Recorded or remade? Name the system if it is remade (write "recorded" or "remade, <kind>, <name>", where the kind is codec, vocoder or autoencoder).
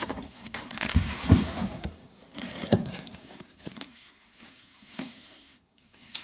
remade, codec, SNAC